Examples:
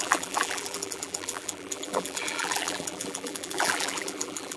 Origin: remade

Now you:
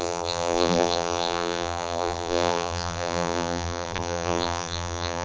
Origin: remade